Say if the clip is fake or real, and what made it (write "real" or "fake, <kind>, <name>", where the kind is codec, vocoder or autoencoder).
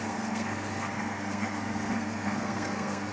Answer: fake, codec, SNAC